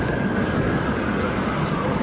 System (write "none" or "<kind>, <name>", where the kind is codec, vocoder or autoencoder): codec, DAC